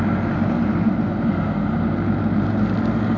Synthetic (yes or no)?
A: no